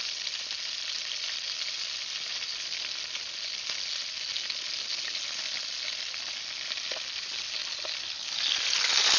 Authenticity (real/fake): real